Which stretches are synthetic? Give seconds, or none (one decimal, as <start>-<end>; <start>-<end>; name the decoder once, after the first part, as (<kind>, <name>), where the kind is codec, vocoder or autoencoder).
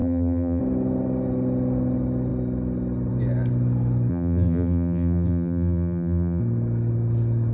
0.0-0.6 (vocoder, BigVGAN v2); 4.1-6.4